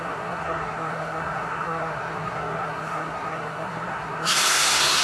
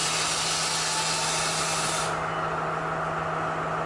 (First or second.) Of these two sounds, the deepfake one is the first